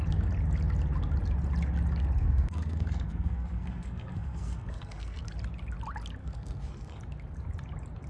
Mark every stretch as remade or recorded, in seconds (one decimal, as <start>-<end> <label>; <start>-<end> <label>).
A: 0.0-2.2 recorded; 2.2-5.2 remade; 5.2-6.2 recorded; 6.2-7.0 remade; 7.0-8.1 recorded